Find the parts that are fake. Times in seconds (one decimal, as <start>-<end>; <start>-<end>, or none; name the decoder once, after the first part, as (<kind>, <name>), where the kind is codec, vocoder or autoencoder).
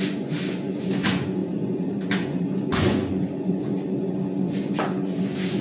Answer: 0.0-5.6 (vocoder, Vocos)